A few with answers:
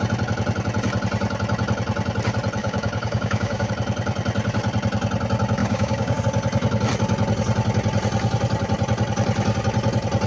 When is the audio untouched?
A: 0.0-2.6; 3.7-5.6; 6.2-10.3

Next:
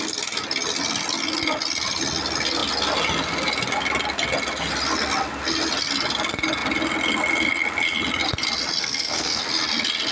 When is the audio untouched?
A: 0.0-8.8; 9.4-10.1

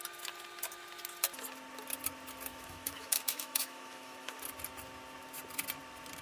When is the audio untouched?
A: 0.0-2.5; 4.4-6.2

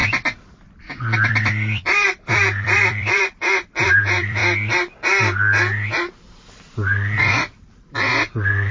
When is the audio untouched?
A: 4.4-7.2

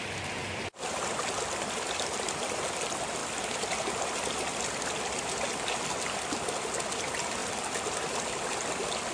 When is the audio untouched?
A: 0.0-9.1

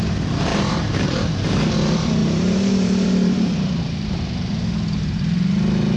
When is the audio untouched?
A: 0.0-0.5; 1.7-2.2; 4.6-6.0